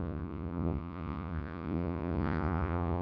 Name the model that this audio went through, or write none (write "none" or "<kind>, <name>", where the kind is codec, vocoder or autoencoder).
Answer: vocoder, Vocos